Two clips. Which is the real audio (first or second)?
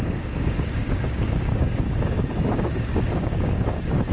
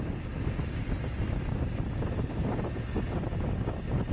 second